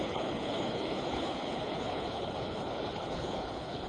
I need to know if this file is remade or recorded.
remade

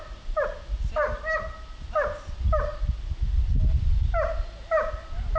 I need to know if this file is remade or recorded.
recorded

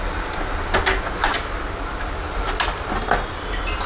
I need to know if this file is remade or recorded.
recorded